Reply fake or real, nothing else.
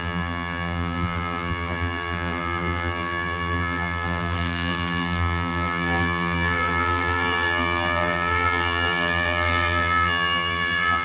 fake